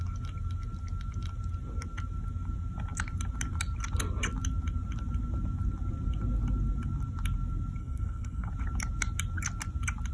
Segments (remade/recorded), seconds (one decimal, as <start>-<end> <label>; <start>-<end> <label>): 0.0-7.8 recorded; 7.8-8.5 remade; 8.5-10.1 recorded